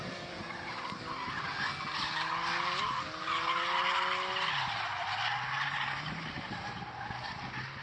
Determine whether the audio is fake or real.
real